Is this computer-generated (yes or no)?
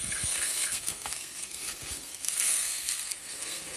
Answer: yes